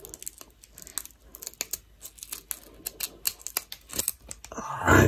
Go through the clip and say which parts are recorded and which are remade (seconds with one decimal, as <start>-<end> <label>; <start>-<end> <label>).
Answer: 0.0-5.1 recorded